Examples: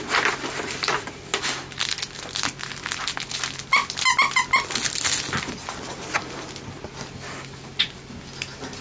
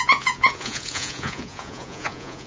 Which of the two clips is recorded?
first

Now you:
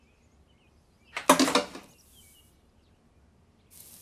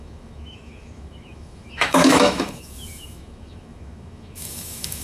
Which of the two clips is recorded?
first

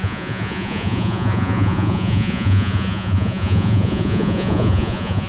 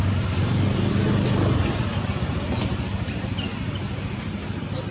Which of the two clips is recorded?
second